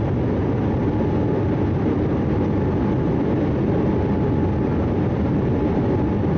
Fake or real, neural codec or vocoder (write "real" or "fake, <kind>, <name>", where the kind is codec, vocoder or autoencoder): real